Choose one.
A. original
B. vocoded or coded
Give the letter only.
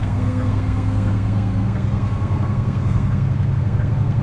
B